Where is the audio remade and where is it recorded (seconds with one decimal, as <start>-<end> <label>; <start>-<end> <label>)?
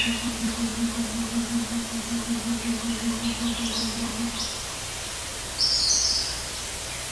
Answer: 0.0-0.7 remade; 0.7-3.6 recorded; 3.6-5.3 remade; 5.3-7.1 recorded